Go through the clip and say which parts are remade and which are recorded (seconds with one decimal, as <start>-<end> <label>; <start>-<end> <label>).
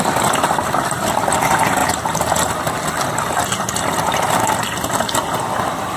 0.0-6.0 recorded